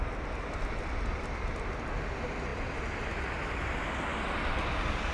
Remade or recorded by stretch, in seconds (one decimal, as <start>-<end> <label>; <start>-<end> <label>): 0.0-5.1 recorded